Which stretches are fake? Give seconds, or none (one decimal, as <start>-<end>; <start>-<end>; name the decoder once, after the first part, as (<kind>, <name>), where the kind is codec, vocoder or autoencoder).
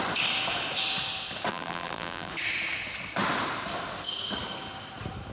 1.5-2.3 (vocoder, BigVGAN v2)